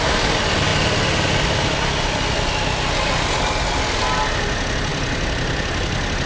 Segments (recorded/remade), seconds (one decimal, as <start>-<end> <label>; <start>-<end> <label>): 0.0-6.3 recorded